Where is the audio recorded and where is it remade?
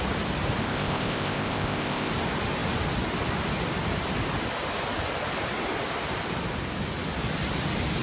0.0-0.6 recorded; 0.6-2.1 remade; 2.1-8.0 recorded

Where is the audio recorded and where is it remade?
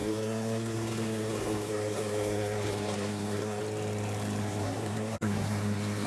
0.0-3.6 remade; 3.6-4.4 recorded; 4.4-6.1 remade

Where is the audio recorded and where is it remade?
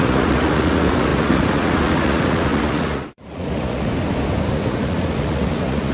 0.0-3.9 remade; 3.9-4.5 recorded; 4.5-5.9 remade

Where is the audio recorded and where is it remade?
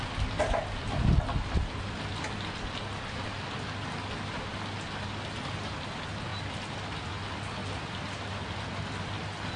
0.0-9.6 recorded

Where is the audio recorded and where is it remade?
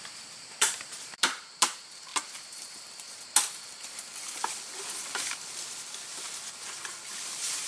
0.0-2.1 remade; 2.1-6.5 recorded; 6.5-7.7 remade